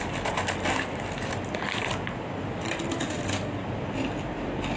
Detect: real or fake real